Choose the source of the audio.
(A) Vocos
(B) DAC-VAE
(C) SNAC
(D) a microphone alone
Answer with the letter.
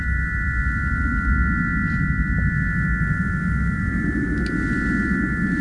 D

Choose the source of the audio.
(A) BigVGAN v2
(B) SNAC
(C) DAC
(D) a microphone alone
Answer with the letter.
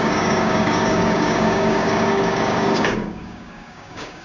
C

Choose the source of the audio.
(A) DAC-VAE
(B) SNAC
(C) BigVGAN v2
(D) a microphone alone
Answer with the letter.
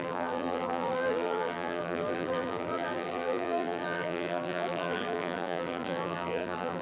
C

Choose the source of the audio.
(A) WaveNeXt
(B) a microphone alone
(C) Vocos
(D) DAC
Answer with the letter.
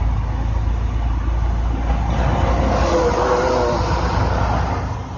B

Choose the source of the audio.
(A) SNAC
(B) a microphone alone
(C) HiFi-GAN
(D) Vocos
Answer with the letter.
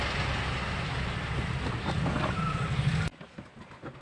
B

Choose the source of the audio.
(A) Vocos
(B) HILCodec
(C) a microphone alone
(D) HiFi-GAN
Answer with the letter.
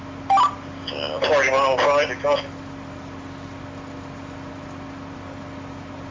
C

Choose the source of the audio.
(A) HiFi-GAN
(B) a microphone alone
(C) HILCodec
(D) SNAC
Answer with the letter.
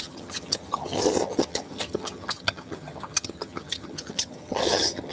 A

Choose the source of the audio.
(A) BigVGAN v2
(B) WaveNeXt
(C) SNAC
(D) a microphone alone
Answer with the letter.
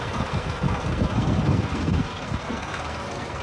C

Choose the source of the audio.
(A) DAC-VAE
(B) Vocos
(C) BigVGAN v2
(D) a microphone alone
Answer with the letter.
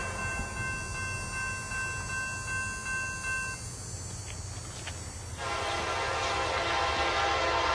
D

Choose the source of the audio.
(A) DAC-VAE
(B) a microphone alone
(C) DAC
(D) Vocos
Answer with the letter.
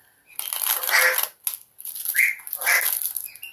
B